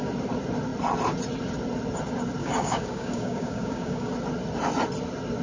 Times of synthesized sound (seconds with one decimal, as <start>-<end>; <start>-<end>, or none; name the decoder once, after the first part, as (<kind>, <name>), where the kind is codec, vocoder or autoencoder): 2.4-4.1 (codec, DAC)